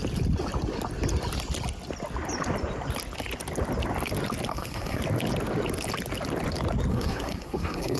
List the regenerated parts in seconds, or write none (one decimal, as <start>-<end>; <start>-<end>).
4.5-5.0; 6.9-8.0